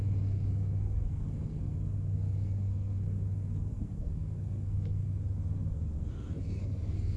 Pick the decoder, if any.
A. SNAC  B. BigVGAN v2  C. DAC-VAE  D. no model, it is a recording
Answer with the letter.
A